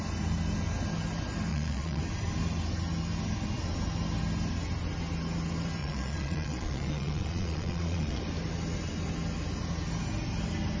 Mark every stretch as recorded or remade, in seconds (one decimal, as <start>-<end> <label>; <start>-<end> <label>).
0.0-1.5 recorded; 1.5-2.0 remade; 2.0-5.8 recorded; 5.8-8.2 remade; 8.2-10.8 recorded